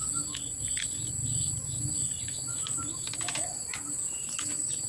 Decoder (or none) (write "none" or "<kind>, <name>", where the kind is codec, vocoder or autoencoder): none